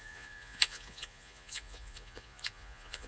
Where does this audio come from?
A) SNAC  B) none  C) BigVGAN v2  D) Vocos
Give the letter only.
D